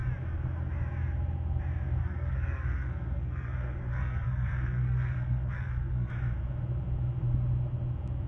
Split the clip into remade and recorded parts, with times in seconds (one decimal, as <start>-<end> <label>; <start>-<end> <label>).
0.0-2.0 recorded; 2.0-6.1 remade; 6.1-8.3 recorded